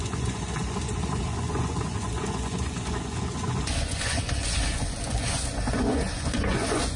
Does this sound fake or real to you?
fake